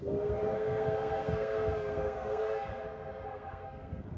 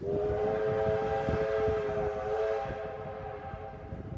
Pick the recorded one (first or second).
second